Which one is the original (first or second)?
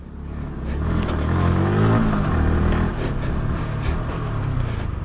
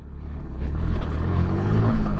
first